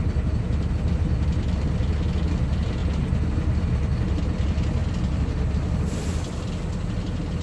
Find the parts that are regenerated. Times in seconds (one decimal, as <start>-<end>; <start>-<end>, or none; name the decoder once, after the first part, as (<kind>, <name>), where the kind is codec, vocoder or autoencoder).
none